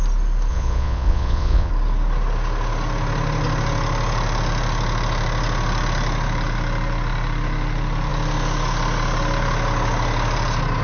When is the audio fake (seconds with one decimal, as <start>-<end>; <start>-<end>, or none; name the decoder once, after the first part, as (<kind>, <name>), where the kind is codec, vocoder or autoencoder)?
0.5-1.7 (vocoder, Vocos)